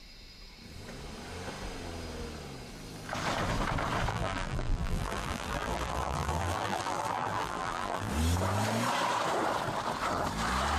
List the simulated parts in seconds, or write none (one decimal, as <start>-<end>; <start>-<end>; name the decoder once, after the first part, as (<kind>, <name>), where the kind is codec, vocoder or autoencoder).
4.1-8.1 (vocoder, BigVGAN v2)